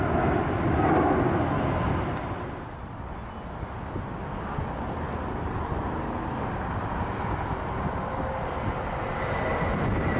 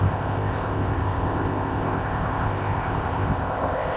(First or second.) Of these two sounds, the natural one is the first